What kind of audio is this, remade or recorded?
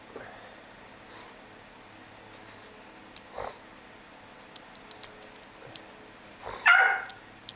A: recorded